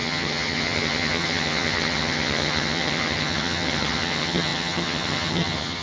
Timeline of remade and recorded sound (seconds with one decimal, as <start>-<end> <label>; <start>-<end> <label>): 0.0-5.8 remade